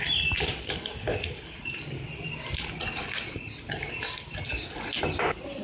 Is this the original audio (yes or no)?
yes